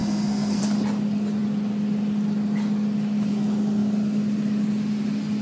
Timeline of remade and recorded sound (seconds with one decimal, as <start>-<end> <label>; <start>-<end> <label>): 0.0-0.6 remade; 0.6-5.4 recorded

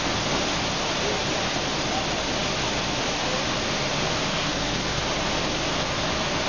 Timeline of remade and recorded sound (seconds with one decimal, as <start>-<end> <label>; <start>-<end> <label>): 0.0-4.3 recorded; 4.3-5.0 remade; 5.0-6.5 recorded

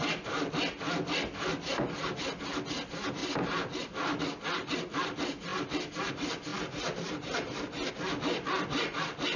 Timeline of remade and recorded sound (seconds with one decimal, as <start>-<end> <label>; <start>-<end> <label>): 0.0-9.4 recorded

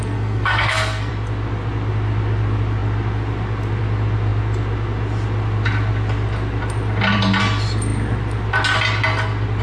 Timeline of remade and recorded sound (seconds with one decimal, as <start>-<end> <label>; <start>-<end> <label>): 0.0-1.1 remade; 1.1-9.6 recorded

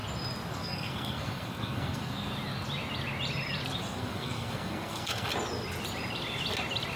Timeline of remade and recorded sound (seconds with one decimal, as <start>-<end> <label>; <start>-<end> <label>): 0.0-0.5 recorded; 0.5-2.3 remade; 2.3-3.8 recorded; 3.8-5.3 remade; 5.3-7.0 recorded

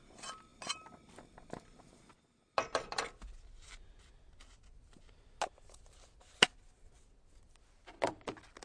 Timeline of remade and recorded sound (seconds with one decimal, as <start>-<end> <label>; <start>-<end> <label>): 0.0-8.6 recorded

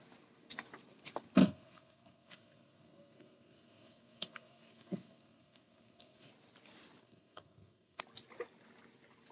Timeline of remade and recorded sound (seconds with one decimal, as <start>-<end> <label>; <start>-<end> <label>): 0.0-1.4 recorded; 1.4-6.3 remade; 6.3-7.0 recorded; 7.0-8.0 remade; 8.0-9.3 recorded